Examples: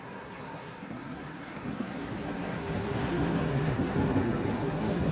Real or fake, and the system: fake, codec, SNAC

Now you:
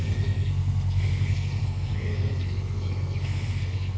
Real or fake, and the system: fake, codec, SNAC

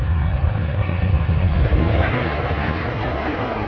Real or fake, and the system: fake, codec, SNAC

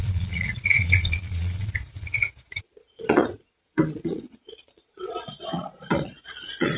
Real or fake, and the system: fake, vocoder, Vocos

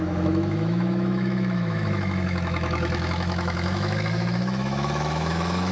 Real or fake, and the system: fake, autoencoder, DAC-VAE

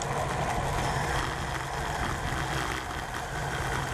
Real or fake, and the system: real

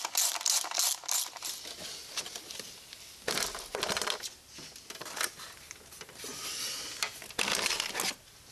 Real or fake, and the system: real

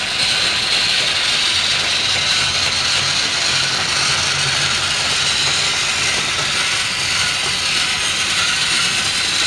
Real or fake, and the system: real